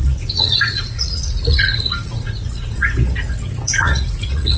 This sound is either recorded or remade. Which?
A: remade